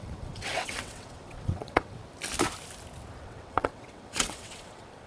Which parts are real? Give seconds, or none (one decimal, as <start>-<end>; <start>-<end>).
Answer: 2.0-3.2